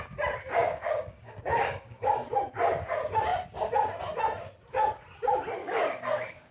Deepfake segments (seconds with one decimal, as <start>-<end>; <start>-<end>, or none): 0.6-2.4; 5.6-6.5